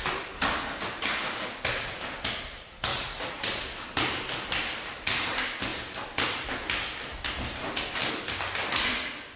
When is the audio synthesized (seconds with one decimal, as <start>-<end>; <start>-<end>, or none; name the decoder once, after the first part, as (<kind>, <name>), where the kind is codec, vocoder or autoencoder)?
2.9-3.5 (vocoder, Vocos)